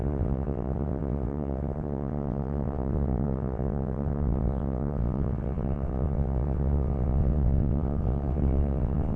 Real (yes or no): no